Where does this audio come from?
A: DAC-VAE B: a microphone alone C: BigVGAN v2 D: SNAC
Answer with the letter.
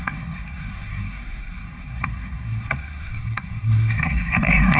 D